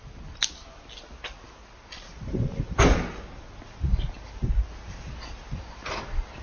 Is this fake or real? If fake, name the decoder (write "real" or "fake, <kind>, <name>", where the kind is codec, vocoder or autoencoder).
real